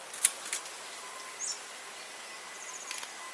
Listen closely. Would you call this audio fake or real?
real